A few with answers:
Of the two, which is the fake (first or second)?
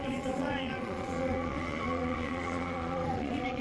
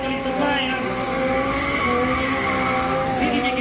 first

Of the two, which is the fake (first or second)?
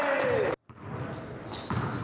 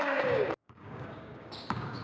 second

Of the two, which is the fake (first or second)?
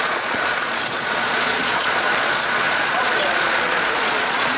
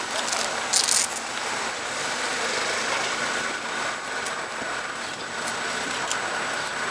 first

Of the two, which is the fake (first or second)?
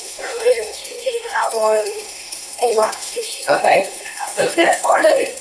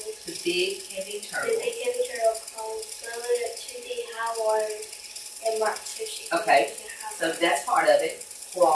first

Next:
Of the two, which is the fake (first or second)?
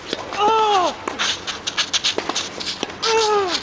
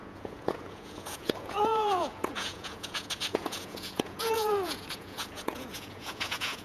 second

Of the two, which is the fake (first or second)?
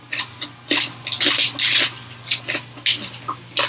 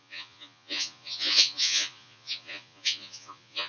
second